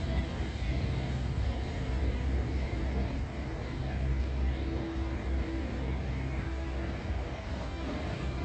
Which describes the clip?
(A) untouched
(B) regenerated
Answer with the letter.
B